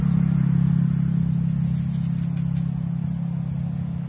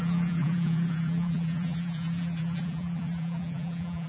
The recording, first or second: first